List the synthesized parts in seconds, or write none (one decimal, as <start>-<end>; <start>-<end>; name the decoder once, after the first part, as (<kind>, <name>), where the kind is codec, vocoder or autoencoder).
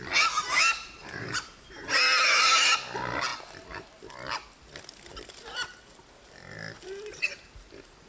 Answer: 1.0-1.9 (vocoder, BigVGAN v2); 7.1-8.1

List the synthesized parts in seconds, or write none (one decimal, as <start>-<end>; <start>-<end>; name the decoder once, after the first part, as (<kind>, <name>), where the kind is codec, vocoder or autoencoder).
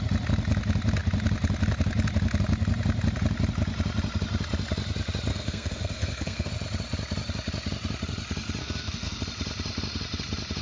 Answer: 5.3-6.5 (codec, SNAC); 8.6-9.2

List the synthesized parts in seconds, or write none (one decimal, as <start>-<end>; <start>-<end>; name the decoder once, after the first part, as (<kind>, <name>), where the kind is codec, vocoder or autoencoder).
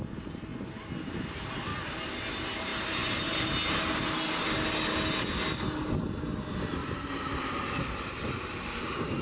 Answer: 1.7-2.2 (vocoder, BigVGAN v2); 6.8-9.2